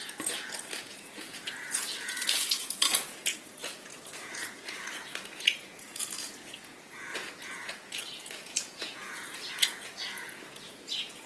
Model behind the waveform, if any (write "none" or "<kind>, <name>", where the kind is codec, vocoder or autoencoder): vocoder, Vocos